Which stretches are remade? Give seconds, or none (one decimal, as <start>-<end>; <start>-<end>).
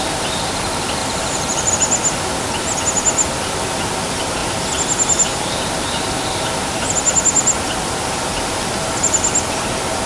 1.0-1.7